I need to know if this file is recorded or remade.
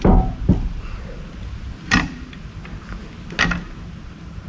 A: recorded